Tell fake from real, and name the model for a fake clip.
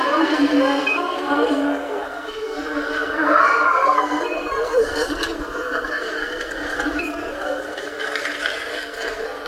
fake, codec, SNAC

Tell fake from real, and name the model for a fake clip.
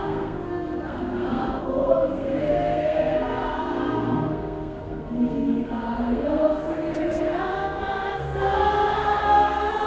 fake, codec, SNAC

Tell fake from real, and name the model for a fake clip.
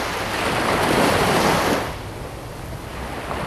real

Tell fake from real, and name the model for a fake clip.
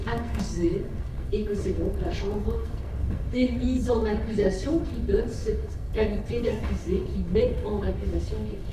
fake, codec, SNAC